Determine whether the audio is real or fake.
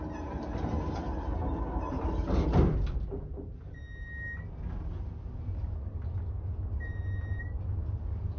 real